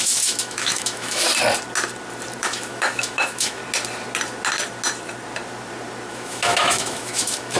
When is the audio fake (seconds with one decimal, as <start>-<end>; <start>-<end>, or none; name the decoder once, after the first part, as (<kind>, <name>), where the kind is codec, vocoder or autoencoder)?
0.0-1.3 (autoencoder, DAC-VAE); 2.4-3.6; 6.1-7.6